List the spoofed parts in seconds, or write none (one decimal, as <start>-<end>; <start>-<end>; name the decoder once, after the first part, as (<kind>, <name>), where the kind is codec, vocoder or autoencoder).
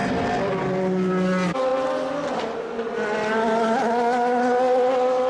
none